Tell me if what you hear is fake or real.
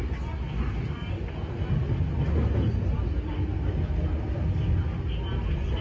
real